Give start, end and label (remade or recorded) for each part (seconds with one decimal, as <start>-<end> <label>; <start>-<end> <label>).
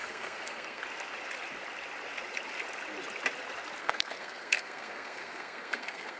0.0-0.8 remade; 0.8-3.8 recorded; 3.8-6.2 remade